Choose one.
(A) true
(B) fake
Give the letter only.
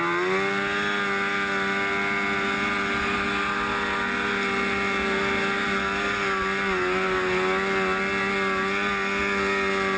A